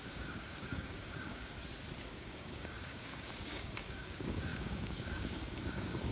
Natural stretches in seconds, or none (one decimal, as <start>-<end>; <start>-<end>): 1.6-2.1